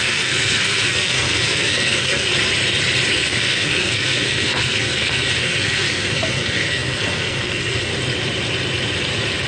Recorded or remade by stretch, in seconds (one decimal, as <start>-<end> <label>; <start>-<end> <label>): 0.0-2.3 remade; 2.3-3.1 recorded; 3.1-7.9 remade; 7.9-9.5 recorded